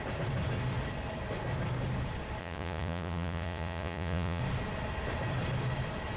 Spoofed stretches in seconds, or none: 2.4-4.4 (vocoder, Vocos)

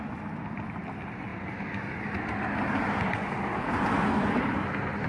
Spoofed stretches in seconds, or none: none